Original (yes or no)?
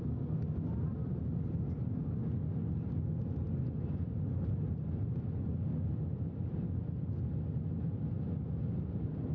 yes